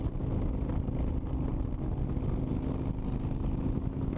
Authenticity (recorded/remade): recorded